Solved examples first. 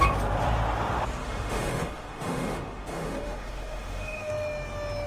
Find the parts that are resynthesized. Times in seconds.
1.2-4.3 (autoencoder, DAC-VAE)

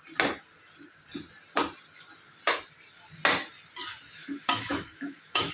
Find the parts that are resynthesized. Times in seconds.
4.2-5.5 (autoencoder, DAC-VAE)

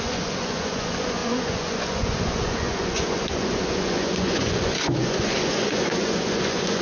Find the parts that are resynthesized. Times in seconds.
0.0-6.8 (vocoder, Vocos)